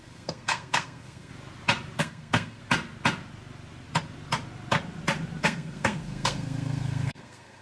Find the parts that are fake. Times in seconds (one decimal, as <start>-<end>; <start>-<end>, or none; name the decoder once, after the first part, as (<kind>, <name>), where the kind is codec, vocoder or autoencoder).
0.0-1.3 (codec, SNAC); 2.0-2.6; 5.4-7.6